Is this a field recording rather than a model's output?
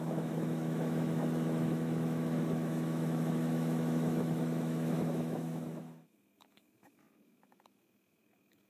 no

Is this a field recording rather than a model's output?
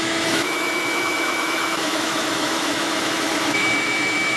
no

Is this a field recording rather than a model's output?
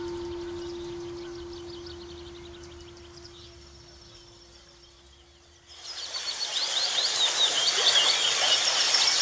yes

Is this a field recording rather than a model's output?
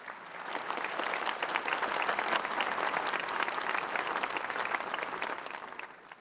yes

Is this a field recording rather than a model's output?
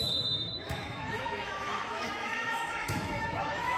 no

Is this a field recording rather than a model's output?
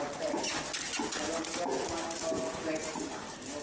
yes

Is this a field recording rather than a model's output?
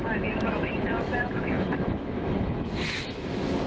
no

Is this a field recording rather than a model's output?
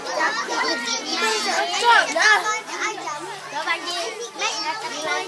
yes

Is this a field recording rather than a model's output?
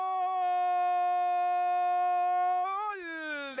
yes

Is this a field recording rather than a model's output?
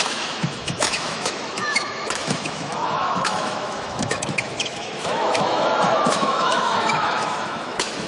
no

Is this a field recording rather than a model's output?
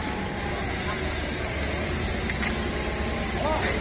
yes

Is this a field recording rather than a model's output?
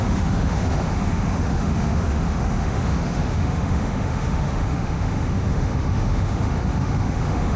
no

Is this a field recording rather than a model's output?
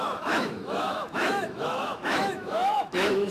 no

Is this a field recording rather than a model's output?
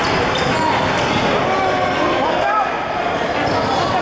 yes